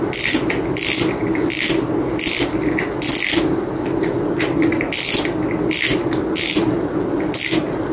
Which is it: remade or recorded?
recorded